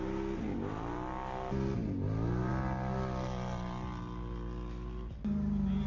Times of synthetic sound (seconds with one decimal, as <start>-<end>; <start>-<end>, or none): none